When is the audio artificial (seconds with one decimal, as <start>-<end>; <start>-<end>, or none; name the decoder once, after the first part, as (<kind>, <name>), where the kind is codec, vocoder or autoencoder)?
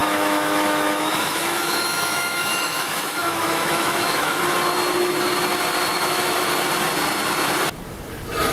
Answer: 0.0-4.4 (autoencoder, DAC-VAE); 5.9-6.5